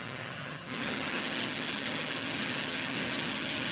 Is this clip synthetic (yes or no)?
yes